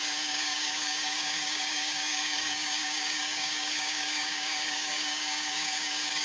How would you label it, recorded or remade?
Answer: remade